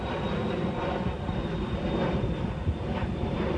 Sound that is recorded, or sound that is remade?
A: remade